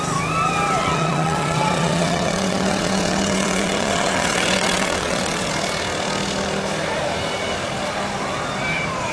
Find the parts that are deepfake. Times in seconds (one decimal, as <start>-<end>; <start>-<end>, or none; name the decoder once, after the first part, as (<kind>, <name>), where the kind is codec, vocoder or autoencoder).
0.8-5.5 (vocoder, WaveNeXt)